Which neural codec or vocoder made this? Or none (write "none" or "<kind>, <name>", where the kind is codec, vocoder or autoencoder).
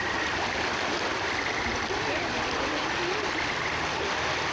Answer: none